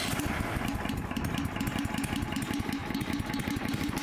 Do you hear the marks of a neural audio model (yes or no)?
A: no